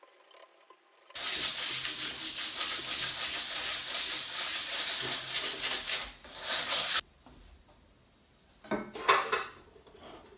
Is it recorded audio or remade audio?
recorded